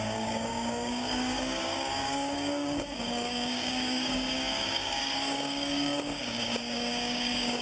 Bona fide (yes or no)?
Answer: no